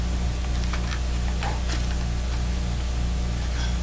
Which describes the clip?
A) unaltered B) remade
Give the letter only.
A